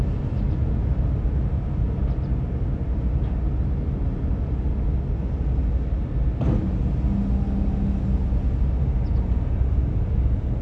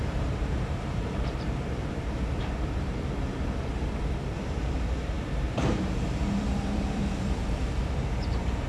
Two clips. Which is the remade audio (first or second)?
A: second